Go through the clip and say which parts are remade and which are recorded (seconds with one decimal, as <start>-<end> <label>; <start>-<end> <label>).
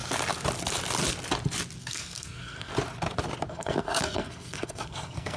0.0-1.8 recorded; 1.8-2.7 remade; 2.7-3.5 recorded; 3.5-5.4 remade